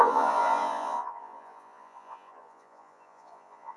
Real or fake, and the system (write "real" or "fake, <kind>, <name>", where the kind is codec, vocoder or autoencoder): fake, vocoder, Vocos